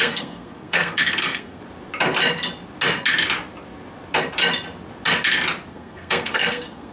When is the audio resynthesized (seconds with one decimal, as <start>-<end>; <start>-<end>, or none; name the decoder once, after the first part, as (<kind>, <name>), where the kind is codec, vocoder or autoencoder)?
0.0-1.6 (codec, SNAC); 5.7-6.9

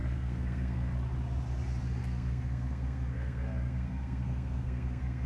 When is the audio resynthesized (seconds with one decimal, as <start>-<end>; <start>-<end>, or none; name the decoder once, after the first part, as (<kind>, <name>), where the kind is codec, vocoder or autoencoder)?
0.0-0.9 (codec, SNAC); 2.0-5.3

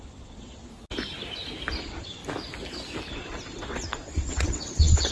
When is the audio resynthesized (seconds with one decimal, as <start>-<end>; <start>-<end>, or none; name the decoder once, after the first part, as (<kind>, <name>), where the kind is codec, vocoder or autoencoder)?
0.0-0.7 (vocoder, WaveNeXt); 1.8-2.2; 3.1-5.1

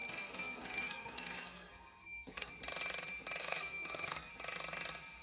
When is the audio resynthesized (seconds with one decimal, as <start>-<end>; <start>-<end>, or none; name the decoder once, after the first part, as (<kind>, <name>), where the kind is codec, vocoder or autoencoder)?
0.0-2.5 (codec, SNAC); 3.4-4.3

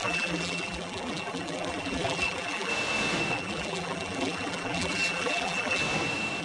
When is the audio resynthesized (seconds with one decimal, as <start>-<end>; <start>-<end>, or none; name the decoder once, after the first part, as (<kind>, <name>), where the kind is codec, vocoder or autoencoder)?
0.0-2.7 (vocoder, BigVGAN v2); 3.3-5.8

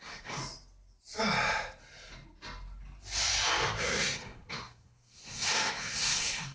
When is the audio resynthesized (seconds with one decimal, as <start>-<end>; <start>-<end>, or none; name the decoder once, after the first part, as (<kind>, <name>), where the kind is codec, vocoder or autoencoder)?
0.0-0.4 (codec, SNAC); 3.8-6.5